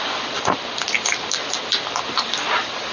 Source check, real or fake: real